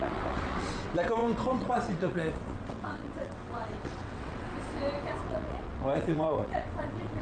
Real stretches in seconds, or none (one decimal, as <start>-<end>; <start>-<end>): 4.5-5.2